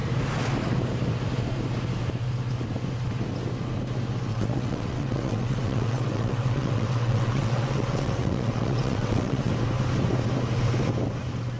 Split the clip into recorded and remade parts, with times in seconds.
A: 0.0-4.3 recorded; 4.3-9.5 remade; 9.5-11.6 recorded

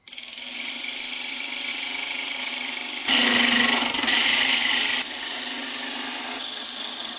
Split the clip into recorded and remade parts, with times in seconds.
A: 0.0-1.7 recorded; 1.7-2.5 remade; 2.5-7.2 recorded

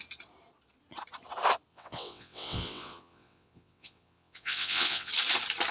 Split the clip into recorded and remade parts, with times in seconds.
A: 0.0-1.7 recorded; 1.7-5.1 remade; 5.1-5.7 recorded

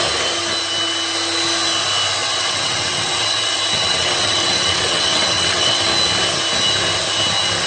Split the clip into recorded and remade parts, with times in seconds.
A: 0.0-2.2 recorded; 2.2-5.8 remade; 5.8-7.7 recorded

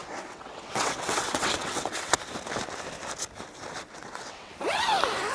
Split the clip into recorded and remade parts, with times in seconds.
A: 0.0-2.1 remade; 2.1-3.9 recorded; 3.9-4.5 remade; 4.5-5.3 recorded

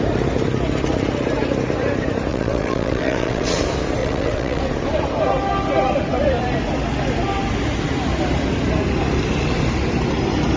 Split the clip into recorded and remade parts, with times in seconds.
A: 0.0-2.3 recorded; 2.3-3.6 remade; 3.6-4.0 recorded; 4.0-4.6 remade; 4.6-10.6 recorded

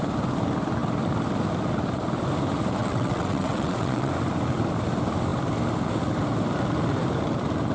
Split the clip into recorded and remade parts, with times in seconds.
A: 0.0-2.8 recorded; 2.8-4.1 remade; 4.1-7.7 recorded

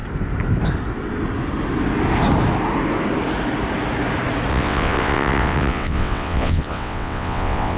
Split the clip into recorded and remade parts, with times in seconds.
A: 0.0-4.5 recorded; 4.5-7.8 remade